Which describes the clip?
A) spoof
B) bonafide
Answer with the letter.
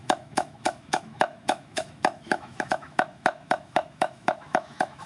A